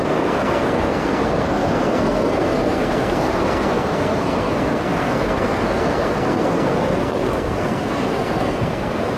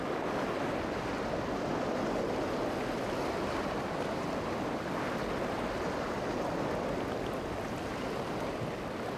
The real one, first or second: second